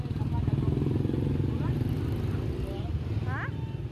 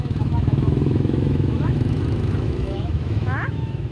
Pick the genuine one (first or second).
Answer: first